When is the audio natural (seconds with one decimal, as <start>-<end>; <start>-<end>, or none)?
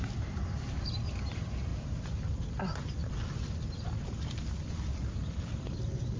1.7-4.5